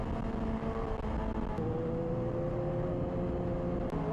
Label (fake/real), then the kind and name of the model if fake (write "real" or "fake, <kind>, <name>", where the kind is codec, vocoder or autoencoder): real